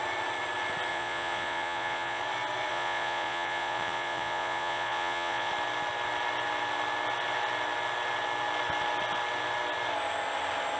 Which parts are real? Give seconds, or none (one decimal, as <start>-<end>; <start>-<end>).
0.0-0.9; 2.2-2.7; 5.5-10.8